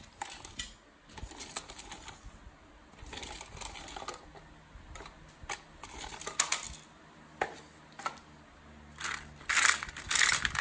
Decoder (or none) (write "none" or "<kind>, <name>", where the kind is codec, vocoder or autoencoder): none